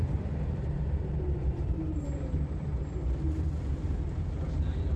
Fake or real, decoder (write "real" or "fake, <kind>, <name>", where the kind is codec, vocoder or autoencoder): fake, vocoder, BigVGAN v2